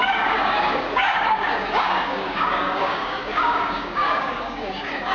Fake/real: fake